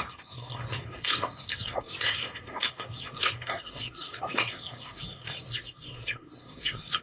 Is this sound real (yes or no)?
no